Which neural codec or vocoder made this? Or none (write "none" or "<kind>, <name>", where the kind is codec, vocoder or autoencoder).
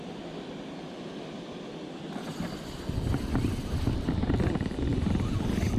none